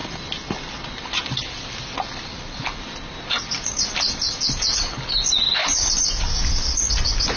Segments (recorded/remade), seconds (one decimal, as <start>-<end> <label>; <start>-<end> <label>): 0.0-7.4 recorded

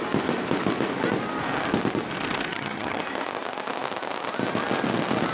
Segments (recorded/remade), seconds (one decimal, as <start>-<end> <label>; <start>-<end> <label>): 0.0-2.5 recorded; 2.5-3.0 remade; 3.0-5.3 recorded

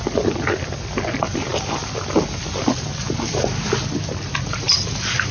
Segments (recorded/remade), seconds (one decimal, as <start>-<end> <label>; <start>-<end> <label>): 0.0-5.3 recorded

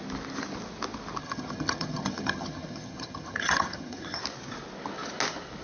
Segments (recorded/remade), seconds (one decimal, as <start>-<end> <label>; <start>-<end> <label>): 0.0-1.2 recorded; 1.2-4.2 remade; 4.2-5.6 recorded